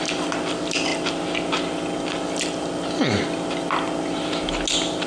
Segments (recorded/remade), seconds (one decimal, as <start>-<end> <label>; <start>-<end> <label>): 0.0-5.1 recorded